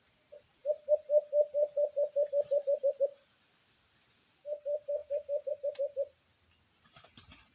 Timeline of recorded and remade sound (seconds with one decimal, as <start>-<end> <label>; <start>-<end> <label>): 0.0-7.5 recorded